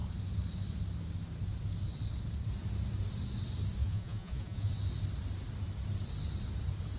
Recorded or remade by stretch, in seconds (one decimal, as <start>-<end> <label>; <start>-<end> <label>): 0.0-3.8 recorded; 3.8-4.7 remade; 4.7-7.0 recorded